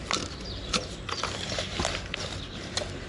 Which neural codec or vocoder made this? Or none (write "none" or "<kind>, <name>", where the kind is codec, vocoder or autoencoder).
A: none